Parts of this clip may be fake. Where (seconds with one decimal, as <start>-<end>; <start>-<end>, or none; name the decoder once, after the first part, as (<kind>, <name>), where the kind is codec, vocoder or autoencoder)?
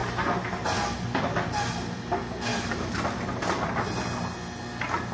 none